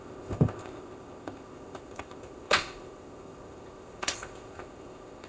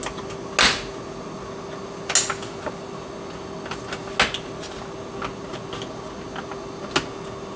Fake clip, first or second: first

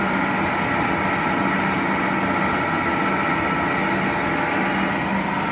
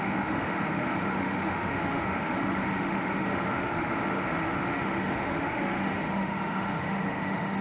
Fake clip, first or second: second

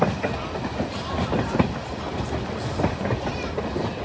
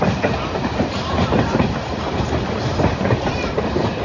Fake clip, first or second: second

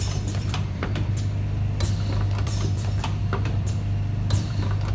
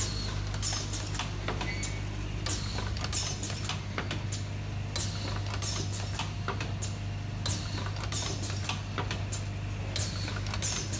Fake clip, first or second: first